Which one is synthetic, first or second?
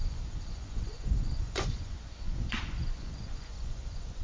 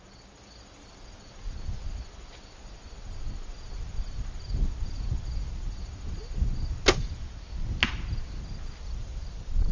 first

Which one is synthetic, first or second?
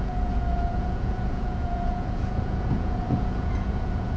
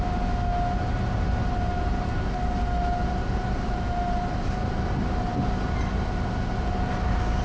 first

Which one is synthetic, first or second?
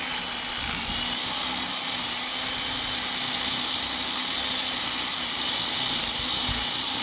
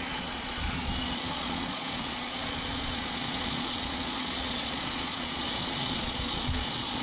second